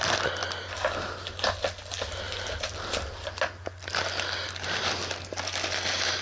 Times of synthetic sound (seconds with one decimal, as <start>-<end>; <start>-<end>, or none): none